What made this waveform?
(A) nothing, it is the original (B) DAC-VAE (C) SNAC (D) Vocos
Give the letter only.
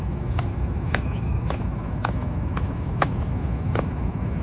B